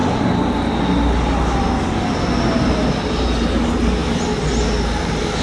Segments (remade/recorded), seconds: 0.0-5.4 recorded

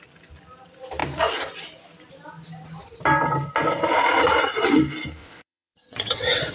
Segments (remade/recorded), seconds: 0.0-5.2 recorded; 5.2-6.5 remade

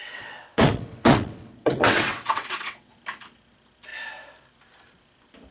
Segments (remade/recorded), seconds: 0.0-2.9 remade; 2.9-5.5 recorded